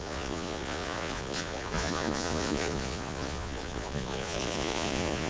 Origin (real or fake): fake